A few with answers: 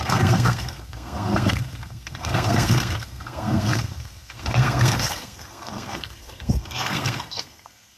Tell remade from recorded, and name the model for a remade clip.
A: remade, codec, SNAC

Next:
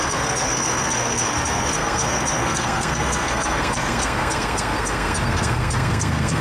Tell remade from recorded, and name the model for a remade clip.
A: remade, codec, SNAC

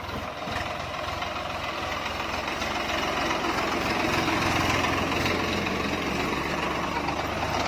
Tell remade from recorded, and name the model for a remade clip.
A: recorded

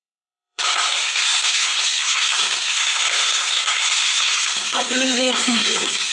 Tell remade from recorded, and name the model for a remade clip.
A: remade, codec, SNAC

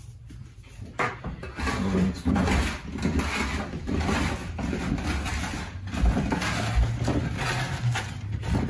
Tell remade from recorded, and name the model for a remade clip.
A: recorded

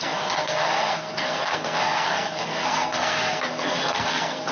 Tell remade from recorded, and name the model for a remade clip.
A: remade, codec, SNAC